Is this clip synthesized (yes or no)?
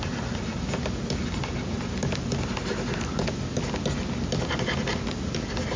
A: no